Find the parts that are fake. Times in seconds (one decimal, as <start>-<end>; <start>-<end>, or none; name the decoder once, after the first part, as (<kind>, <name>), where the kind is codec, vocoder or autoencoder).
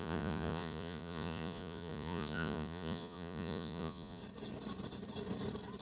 0.0-4.2 (vocoder, Vocos)